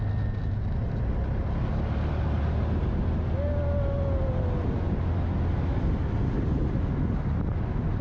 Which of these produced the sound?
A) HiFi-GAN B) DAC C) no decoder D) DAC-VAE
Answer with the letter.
C